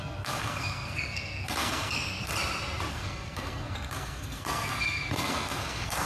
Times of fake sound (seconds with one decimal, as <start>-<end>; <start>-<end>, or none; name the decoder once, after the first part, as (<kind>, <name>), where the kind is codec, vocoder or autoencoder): 0.0-2.3 (codec, SNAC); 2.9-6.1